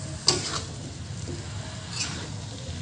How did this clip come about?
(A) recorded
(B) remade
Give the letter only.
A